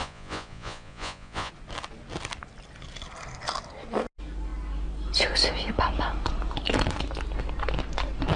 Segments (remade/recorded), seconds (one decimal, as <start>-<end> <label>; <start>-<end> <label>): 0.0-1.5 remade; 1.5-8.4 recorded

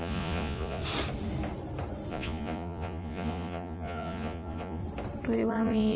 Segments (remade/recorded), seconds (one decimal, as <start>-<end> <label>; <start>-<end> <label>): 0.0-0.8 remade; 0.8-2.1 recorded; 2.1-4.8 remade; 4.8-5.5 recorded; 5.5-6.0 remade

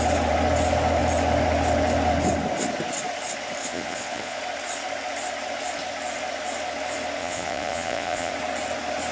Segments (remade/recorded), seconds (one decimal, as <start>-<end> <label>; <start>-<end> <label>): 0.0-3.6 recorded; 3.6-4.4 remade; 4.4-7.2 recorded; 7.2-8.3 remade; 8.3-9.1 recorded

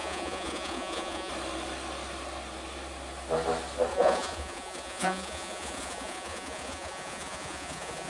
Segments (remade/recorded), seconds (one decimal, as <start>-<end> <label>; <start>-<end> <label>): 0.0-1.3 remade; 1.3-3.9 recorded; 3.9-8.1 remade

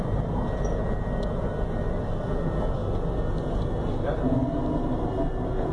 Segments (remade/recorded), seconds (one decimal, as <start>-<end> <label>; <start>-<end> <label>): 0.0-5.7 recorded

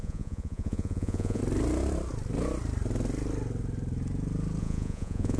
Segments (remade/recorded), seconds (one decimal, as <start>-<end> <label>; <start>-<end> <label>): 0.0-1.4 remade; 1.4-4.6 recorded; 4.6-5.4 remade